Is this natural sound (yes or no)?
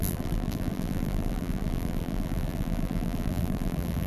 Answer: no